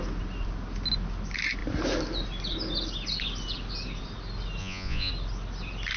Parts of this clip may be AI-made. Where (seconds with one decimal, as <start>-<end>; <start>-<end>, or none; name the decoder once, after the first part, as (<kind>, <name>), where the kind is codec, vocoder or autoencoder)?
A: 4.6-5.1 (vocoder, Vocos)